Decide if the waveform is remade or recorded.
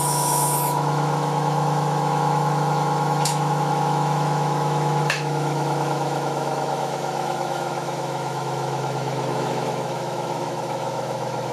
remade